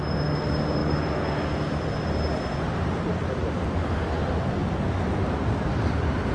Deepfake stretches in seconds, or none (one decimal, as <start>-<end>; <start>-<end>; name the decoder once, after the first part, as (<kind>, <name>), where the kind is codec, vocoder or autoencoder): none

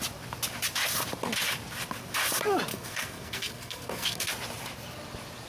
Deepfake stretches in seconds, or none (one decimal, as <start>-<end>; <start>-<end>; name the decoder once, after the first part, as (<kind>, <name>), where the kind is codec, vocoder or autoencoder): 2.7-4.3 (codec, SNAC)

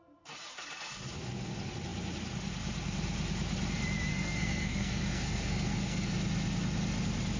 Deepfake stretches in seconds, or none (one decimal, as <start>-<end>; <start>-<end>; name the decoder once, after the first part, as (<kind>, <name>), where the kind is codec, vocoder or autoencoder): 4.1-6.1 (codec, SNAC)

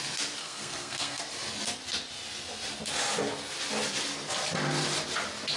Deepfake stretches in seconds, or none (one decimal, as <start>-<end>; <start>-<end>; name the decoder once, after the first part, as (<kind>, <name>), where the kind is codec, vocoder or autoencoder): 0.4-1.2 (codec, SNAC)

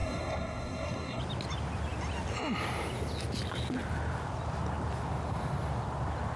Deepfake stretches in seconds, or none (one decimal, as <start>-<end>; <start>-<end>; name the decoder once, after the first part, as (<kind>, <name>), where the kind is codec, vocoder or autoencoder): 0.0-1.2 (codec, SNAC)

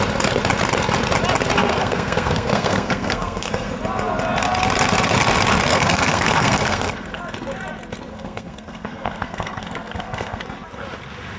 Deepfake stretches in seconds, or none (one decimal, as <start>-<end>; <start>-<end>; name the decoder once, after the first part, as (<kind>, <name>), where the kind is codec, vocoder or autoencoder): 1.7-3.7 (codec, SNAC); 5.7-7.2; 8.1-10.4

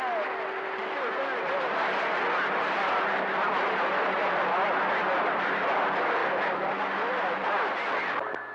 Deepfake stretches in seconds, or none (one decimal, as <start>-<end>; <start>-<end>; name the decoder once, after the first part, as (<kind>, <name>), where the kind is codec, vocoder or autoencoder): none